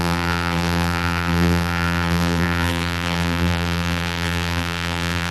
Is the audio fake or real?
fake